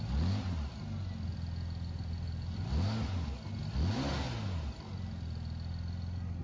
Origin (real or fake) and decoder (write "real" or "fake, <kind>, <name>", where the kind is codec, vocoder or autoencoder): real